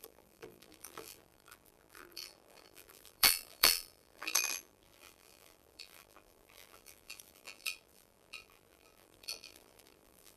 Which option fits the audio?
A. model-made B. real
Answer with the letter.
A